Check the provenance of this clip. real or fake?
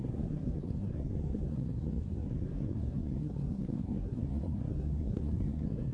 fake